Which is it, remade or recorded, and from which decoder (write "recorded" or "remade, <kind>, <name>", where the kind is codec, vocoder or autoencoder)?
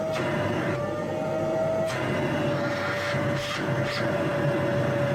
recorded